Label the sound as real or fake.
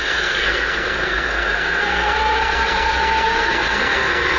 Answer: fake